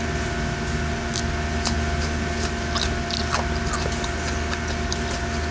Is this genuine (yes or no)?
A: yes